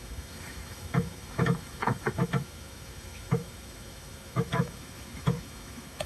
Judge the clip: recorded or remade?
remade